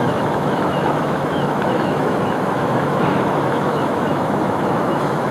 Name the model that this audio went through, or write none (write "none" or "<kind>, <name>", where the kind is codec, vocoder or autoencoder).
autoencoder, DAC-VAE